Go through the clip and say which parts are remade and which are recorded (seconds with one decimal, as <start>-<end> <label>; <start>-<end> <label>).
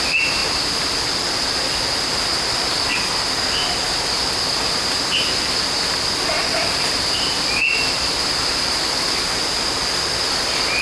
0.0-10.8 recorded